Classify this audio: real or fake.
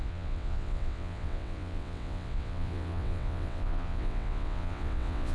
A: fake